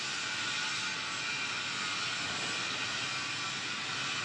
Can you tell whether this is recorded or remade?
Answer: recorded